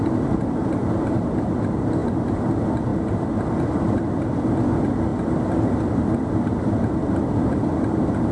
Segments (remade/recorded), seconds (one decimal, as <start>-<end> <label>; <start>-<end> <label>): 0.0-2.0 recorded; 2.0-2.5 remade; 2.5-2.9 recorded; 2.9-4.1 remade; 4.1-5.1 recorded; 5.1-8.3 remade